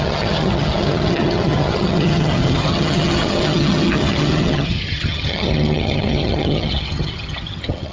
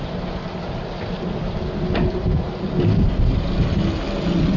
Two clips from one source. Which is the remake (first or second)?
first